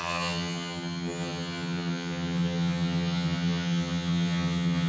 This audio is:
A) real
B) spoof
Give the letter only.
B